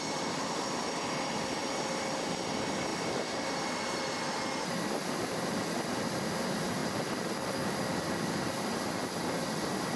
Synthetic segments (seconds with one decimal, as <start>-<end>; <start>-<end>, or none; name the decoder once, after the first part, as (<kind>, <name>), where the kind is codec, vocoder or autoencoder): 1.6-2.1 (vocoder, BigVGAN v2)